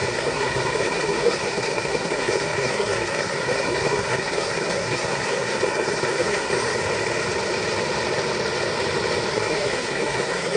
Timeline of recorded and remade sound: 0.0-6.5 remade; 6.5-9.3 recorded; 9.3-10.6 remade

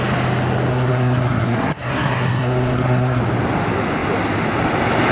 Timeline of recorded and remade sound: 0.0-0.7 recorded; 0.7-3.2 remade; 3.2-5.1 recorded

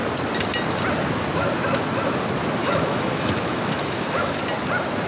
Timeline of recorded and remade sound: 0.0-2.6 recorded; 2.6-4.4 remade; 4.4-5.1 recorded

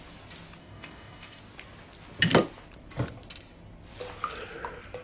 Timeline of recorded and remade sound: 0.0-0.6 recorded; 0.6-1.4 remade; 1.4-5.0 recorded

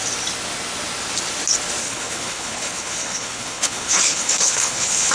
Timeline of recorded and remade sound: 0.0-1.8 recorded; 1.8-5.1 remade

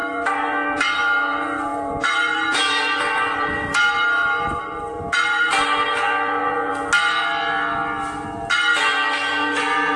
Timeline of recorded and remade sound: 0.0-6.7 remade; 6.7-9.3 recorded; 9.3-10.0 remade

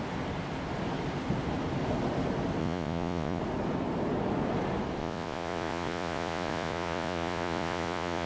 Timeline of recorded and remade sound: 0.0-2.6 recorded; 2.6-3.4 remade; 3.4-5.0 recorded; 5.0-8.3 remade